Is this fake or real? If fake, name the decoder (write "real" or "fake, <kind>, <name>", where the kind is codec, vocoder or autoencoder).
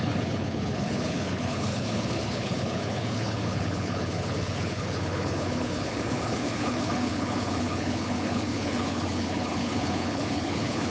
fake, codec, HILCodec